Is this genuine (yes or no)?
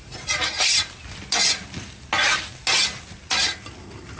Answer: yes